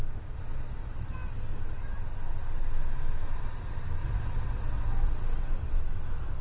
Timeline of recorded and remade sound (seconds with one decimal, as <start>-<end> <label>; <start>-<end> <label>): 0.0-4.0 recorded; 4.0-5.8 remade; 5.8-6.4 recorded